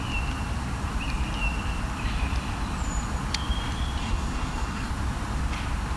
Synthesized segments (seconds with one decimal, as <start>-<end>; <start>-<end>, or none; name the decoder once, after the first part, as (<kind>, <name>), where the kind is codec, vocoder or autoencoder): 4.0-4.9 (codec, SNAC)